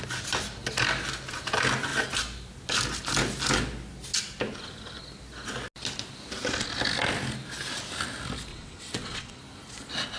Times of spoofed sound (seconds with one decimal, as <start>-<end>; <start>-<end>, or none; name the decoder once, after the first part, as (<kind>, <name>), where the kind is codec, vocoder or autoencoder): 8.5-9.4 (vocoder, WaveNeXt)